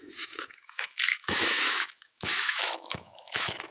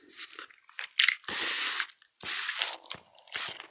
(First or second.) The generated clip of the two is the first